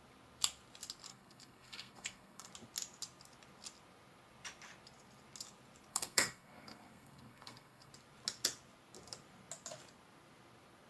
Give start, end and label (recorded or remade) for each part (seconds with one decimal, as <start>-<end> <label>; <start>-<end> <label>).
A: 0.0-1.1 recorded; 1.1-2.5 remade; 2.5-5.9 recorded; 5.9-7.9 remade; 7.9-10.9 recorded